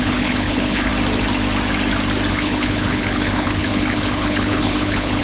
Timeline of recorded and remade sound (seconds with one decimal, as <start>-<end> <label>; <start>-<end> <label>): 0.0-0.9 remade; 0.9-2.3 recorded; 2.3-5.2 remade